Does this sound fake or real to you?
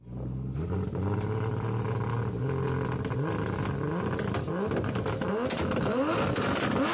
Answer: real